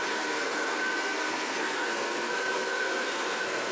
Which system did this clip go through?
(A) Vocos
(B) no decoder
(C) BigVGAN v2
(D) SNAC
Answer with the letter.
D